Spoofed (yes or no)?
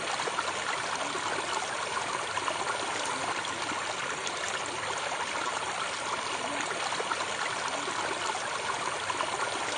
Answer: no